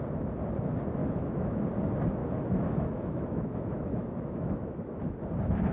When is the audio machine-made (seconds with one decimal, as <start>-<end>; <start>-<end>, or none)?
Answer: 1.0-1.6; 2.2-5.0